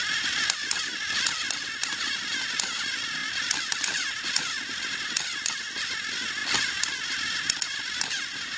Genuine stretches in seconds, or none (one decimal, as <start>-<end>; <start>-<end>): 0.0-8.6